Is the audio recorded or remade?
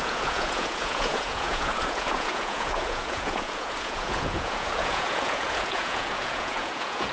remade